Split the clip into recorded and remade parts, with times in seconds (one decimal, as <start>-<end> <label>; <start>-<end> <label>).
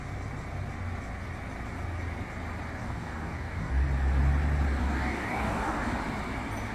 0.0-2.8 recorded; 2.8-3.7 remade; 3.7-4.8 recorded; 4.8-6.0 remade; 6.0-6.7 recorded